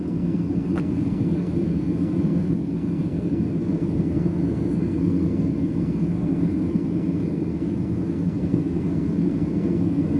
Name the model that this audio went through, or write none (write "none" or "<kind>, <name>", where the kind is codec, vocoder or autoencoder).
codec, SNAC